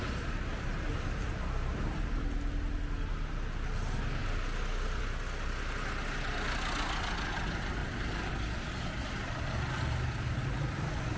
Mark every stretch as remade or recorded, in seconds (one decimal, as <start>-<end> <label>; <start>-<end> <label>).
0.0-0.9 recorded; 0.9-2.2 remade; 2.2-7.8 recorded; 7.8-8.3 remade; 8.3-11.2 recorded